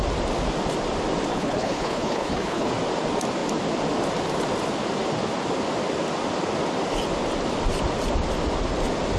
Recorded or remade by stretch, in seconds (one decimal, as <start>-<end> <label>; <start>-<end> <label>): 0.0-1.3 recorded; 1.3-2.7 remade; 2.7-9.2 recorded